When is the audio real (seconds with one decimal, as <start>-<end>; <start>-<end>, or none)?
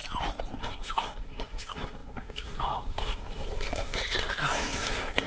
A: 0.0-0.6